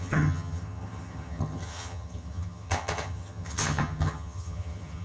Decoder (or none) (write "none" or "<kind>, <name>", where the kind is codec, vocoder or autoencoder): vocoder, HiFi-GAN